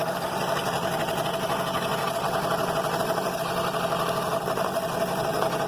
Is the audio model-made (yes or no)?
no